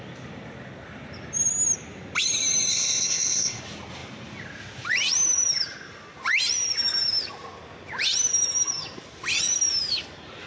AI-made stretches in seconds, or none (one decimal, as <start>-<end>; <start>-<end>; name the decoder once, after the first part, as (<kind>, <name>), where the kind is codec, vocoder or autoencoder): 2.7-3.6 (codec, ZipCodec)

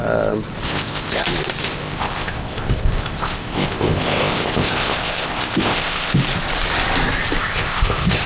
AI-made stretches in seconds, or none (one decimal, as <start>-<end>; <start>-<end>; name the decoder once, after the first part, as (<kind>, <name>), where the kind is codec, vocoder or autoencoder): 0.6-1.2 (codec, ZipCodec); 1.6-6.1; 7.4-8.3

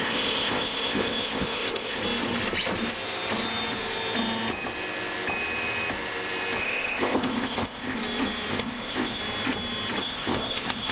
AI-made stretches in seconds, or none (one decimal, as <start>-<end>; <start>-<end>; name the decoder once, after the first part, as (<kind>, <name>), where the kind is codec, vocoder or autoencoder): 0.0-2.0 (codec, ZipCodec); 6.6-8.0; 8.5-9.2; 10.0-10.9

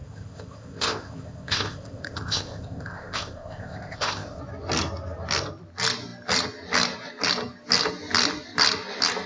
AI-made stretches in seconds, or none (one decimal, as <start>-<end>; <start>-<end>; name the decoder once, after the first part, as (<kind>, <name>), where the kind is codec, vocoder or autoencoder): 0.0-4.4 (codec, ZipCodec)

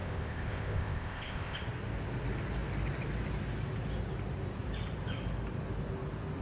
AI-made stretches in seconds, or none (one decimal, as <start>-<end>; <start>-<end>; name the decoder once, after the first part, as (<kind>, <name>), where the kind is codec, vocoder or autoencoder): 0.0-1.6 (codec, ZipCodec)

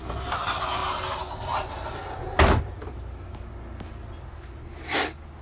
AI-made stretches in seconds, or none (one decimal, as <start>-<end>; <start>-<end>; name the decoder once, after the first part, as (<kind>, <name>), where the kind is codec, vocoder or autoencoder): none